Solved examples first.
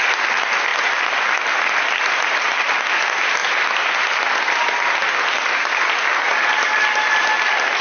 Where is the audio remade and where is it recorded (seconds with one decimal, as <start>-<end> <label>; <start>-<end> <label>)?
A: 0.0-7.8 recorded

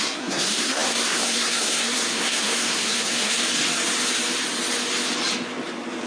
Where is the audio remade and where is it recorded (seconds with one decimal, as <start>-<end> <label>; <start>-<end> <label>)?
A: 0.0-3.4 remade; 3.4-6.1 recorded

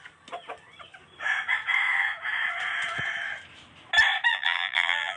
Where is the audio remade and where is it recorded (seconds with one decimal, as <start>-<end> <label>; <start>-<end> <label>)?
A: 0.0-4.3 recorded; 4.3-5.2 remade